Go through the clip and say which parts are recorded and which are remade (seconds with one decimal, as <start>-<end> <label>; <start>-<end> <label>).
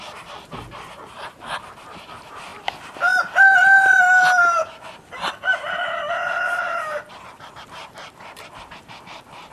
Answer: 0.0-2.5 remade; 2.5-7.5 recorded; 7.5-9.5 remade